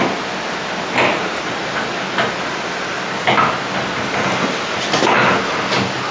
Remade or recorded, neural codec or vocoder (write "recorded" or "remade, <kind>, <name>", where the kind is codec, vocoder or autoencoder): recorded